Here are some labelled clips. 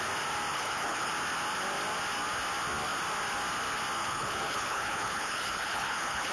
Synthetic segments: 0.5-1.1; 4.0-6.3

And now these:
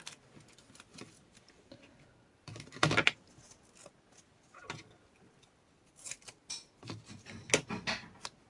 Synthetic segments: none

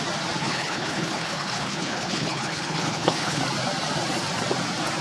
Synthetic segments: 0.4-3.4

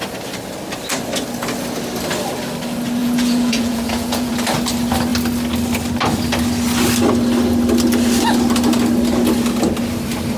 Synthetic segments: 3.0-4.3

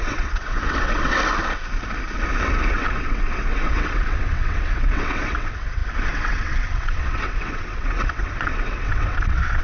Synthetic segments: 0.0-1.2; 2.7-9.6